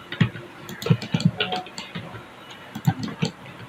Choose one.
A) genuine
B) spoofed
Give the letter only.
A